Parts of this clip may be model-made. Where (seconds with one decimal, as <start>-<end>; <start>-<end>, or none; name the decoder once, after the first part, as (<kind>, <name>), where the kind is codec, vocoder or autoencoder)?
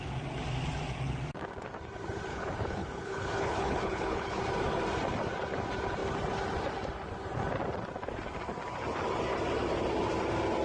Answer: 2.3-4.4 (codec, HILCodec)